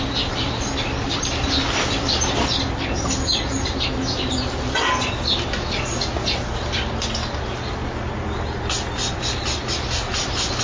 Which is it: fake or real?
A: real